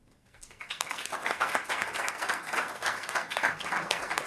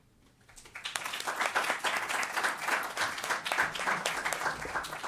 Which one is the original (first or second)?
second